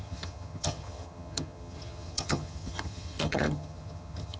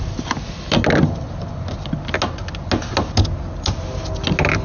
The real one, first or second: second